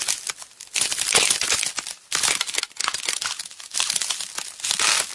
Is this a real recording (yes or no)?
yes